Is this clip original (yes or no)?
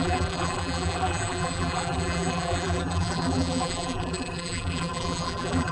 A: no